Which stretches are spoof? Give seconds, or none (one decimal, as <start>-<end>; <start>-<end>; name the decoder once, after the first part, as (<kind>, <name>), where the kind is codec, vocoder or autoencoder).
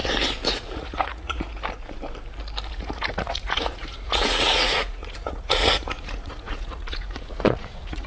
0.5-1.5 (vocoder, Vocos); 2.7-8.1